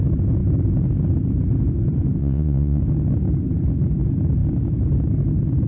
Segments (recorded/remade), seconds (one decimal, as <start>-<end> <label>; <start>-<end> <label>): 0.0-2.2 recorded; 2.2-2.8 remade; 2.8-5.7 recorded